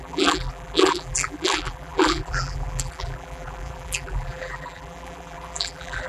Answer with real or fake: fake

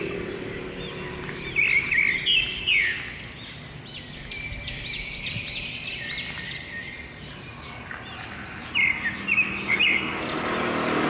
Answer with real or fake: real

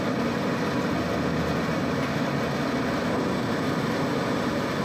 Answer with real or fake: real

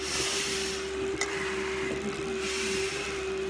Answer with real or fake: real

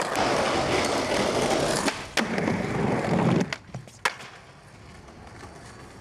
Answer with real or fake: real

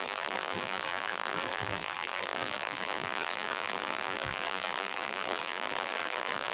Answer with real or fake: fake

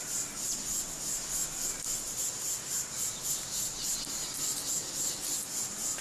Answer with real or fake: real